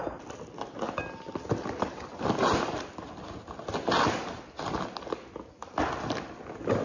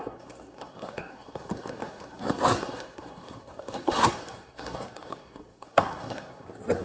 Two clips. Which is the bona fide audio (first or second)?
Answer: first